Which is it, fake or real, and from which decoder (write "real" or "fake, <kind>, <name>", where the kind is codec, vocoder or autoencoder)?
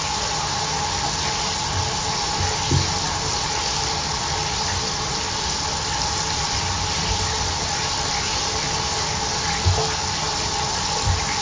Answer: real